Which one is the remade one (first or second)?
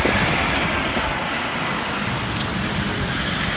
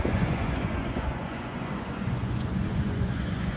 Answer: second